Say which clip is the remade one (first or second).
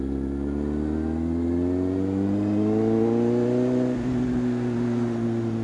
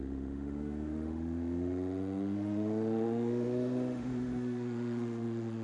second